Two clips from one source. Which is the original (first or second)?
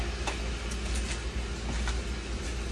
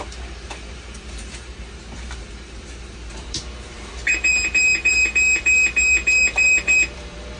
first